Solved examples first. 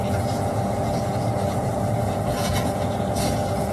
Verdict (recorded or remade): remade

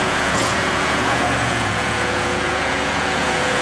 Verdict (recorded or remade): remade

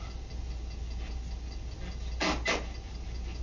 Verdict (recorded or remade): recorded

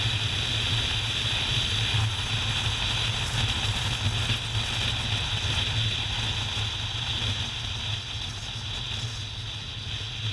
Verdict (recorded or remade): recorded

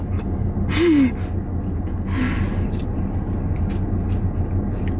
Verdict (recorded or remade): recorded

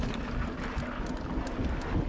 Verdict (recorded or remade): recorded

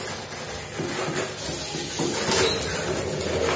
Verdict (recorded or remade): recorded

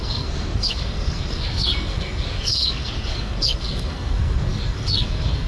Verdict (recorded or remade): remade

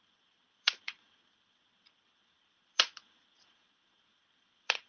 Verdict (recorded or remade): remade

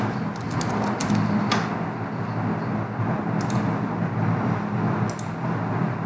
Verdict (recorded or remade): recorded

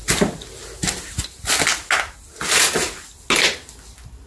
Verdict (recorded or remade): recorded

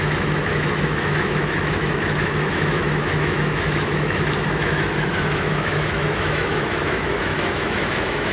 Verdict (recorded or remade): remade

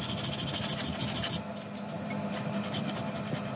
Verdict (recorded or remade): recorded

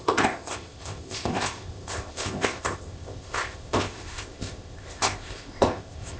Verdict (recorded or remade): remade